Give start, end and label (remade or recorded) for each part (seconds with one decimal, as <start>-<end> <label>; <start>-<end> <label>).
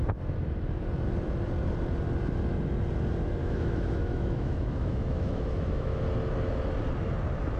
0.0-3.4 recorded; 3.4-6.0 remade; 6.0-7.6 recorded